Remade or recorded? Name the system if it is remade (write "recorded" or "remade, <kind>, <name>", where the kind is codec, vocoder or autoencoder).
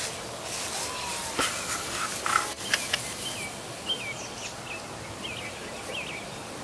recorded